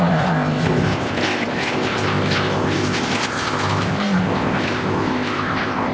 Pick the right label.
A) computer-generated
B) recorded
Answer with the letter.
A